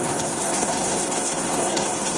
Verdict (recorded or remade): remade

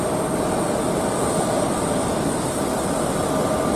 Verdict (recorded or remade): remade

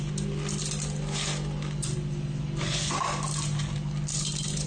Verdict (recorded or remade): recorded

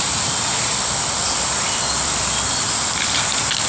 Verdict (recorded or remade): recorded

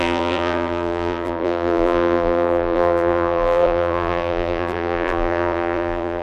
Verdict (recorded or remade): remade